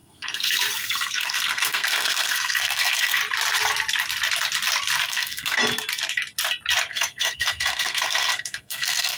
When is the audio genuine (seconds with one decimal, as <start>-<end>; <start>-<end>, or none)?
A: 3.2-5.1; 5.6-6.9